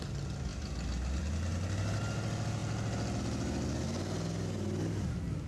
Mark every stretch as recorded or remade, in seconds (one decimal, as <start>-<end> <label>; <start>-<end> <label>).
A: 0.0-5.5 recorded

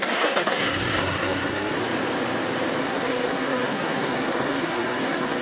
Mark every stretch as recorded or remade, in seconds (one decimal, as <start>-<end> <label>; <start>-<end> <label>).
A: 0.0-1.8 remade; 1.8-2.8 recorded; 2.8-5.4 remade

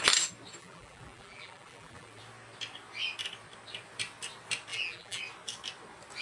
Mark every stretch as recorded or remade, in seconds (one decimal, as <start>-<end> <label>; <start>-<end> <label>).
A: 0.0-0.6 recorded; 0.6-2.2 remade; 2.2-4.7 recorded; 4.7-5.2 remade; 5.2-6.2 recorded

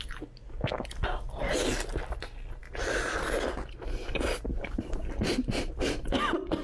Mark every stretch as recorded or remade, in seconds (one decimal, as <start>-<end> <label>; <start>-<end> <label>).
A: 0.0-6.6 recorded